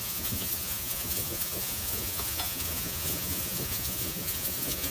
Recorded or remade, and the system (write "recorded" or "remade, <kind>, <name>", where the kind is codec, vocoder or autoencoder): remade, vocoder, Vocos